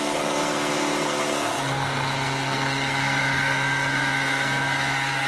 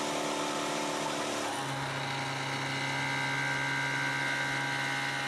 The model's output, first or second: first